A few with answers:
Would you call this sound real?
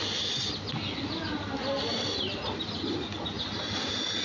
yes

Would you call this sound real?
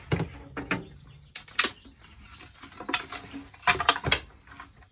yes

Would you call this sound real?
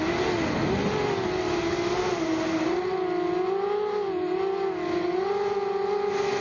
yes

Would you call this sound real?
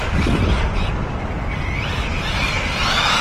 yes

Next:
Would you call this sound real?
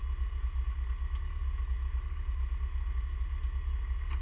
yes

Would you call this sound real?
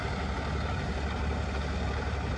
yes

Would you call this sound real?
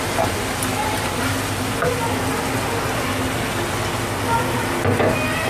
yes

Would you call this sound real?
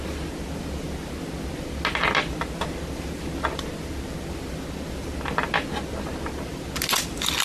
yes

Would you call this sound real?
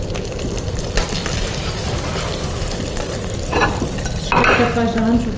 yes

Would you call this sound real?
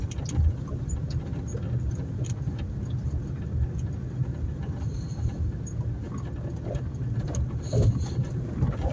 yes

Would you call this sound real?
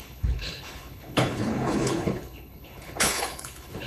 no